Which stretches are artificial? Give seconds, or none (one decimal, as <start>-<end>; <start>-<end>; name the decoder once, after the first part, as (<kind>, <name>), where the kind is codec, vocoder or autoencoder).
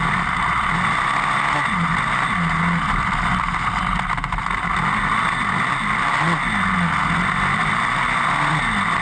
none